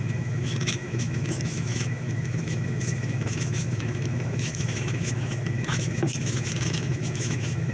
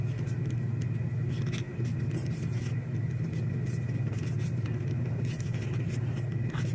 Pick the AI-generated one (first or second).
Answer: first